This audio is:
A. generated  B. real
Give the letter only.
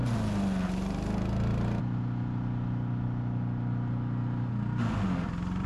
B